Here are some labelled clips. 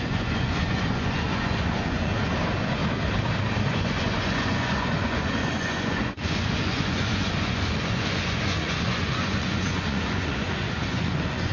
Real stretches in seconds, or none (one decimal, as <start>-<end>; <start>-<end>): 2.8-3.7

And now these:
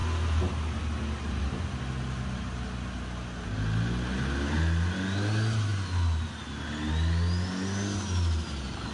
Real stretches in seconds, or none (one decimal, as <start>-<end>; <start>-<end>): 0.0-8.9

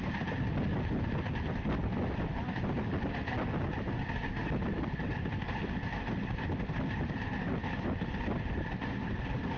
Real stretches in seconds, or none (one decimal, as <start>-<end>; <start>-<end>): 0.0-9.6

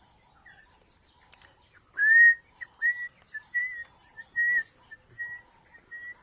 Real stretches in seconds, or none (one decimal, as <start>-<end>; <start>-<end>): 0.0-6.2

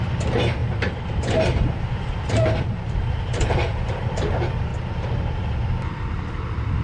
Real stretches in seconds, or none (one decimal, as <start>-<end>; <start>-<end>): 0.0-0.6; 4.1-6.8

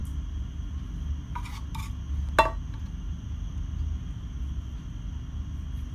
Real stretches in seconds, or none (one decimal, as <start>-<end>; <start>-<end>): 0.0-5.9

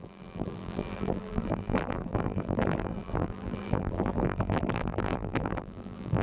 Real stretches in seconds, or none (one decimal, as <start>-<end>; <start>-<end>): none